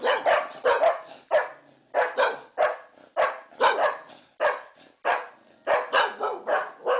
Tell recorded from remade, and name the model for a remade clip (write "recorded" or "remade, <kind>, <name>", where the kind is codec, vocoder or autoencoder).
recorded